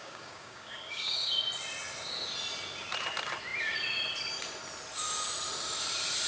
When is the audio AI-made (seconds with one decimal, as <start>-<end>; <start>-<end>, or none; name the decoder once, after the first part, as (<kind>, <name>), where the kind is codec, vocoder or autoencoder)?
0.0-1.4 (codec, DAC)